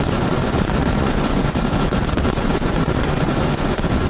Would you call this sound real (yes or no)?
no